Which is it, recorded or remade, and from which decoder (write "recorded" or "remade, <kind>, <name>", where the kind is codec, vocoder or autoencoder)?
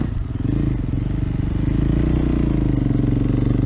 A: recorded